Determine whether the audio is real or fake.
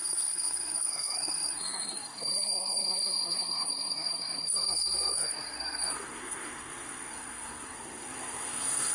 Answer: fake